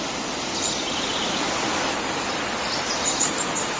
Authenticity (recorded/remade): recorded